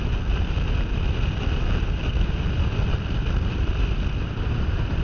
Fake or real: real